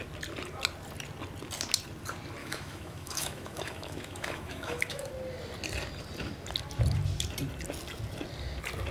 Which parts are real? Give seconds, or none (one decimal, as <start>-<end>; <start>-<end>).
0.0-2.4; 5.1-8.9